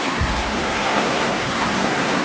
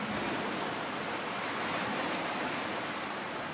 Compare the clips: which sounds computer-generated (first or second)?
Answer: first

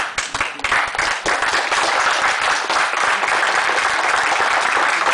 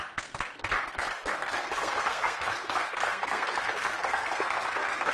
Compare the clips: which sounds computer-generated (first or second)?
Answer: second